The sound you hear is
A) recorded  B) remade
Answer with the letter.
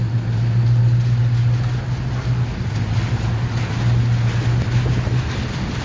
A